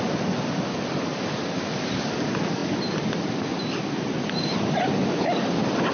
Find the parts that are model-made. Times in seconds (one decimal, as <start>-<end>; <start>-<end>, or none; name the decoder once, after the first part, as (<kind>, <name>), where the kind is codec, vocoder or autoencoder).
1.1-2.0 (vocoder, BigVGAN v2)